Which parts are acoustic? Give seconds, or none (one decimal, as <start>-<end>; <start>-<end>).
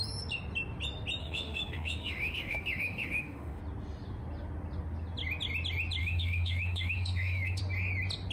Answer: 0.0-1.2; 3.6-6.0; 7.6-8.3